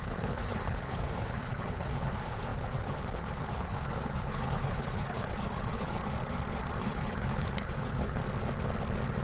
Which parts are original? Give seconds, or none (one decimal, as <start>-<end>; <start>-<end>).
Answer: 6.0-6.8; 8.2-9.2